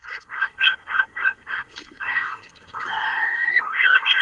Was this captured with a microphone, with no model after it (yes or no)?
no